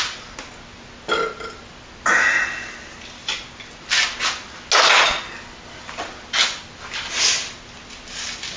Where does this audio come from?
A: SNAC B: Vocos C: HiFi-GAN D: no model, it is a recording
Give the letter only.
D